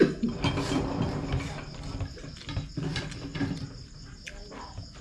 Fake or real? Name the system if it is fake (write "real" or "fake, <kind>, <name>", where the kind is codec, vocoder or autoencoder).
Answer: real